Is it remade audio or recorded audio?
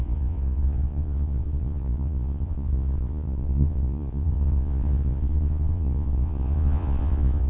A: remade